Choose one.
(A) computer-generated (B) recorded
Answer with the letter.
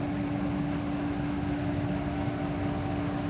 B